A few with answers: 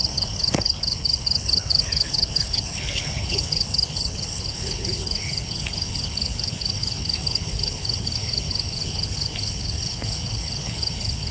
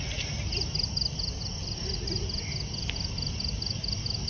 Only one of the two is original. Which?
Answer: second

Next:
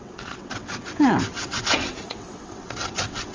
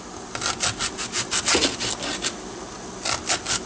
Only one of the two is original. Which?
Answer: second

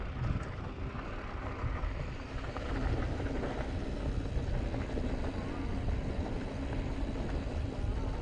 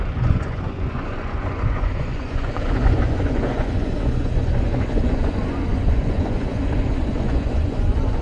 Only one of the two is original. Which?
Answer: first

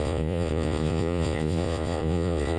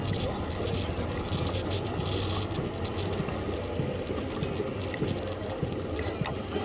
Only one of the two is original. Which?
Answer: second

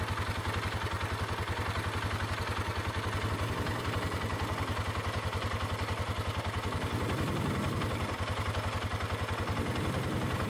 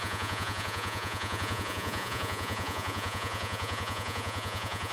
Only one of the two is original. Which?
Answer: first